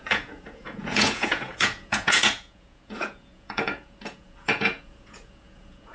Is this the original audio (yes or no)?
no